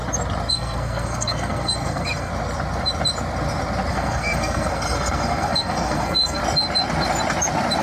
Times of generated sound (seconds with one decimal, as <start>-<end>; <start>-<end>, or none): 0.5-2.3; 3.9-6.4